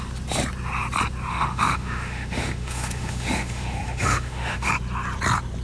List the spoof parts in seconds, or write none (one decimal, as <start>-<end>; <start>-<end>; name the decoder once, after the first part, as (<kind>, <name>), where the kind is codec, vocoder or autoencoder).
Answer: 1.3-4.7 (autoencoder, DAC-VAE)